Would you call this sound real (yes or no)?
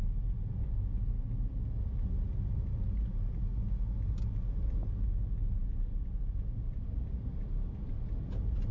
yes